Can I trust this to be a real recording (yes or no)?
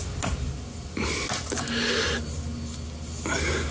yes